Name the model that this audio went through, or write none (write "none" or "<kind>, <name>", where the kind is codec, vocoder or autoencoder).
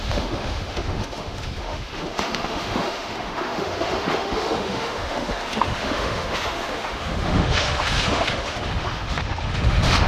autoencoder, DAC-VAE